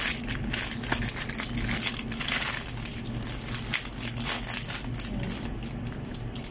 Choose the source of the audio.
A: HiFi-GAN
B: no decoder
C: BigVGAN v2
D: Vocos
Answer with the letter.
B